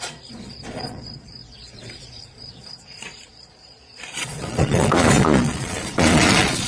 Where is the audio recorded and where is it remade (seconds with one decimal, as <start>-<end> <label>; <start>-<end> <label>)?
0.0-6.7 remade